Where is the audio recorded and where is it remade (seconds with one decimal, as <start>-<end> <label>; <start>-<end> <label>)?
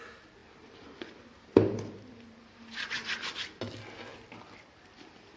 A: 0.0-5.4 recorded